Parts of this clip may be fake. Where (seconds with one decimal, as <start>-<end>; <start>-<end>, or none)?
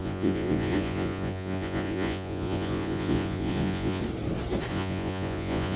0.0-4.0; 4.7-5.8